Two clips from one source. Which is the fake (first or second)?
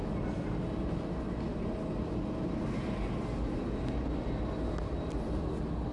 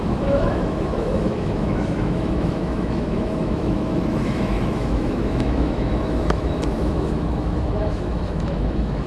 second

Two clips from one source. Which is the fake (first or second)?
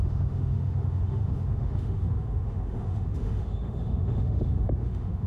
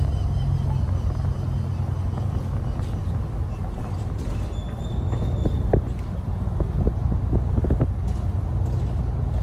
first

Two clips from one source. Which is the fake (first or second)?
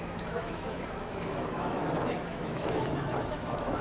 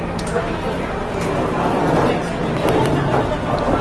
first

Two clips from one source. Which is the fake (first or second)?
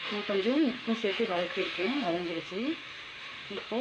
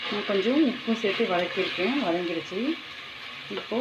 first